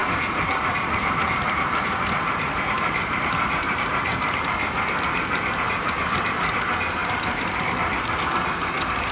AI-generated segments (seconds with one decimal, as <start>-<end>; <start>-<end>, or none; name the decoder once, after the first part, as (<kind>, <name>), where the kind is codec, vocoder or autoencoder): 0.0-4.4 (vocoder, BigVGAN v2); 7.0-8.1